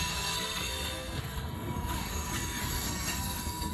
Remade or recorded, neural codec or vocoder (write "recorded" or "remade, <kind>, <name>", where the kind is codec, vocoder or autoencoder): remade, codec, SNAC